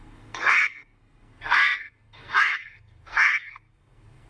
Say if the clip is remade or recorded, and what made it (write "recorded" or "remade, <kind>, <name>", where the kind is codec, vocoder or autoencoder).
remade, codec, SNAC